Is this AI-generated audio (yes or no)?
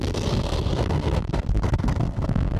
yes